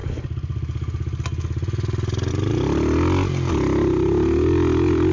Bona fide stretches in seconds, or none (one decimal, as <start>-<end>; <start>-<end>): 0.0-5.1